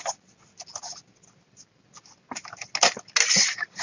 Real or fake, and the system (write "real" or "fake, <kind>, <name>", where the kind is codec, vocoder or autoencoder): real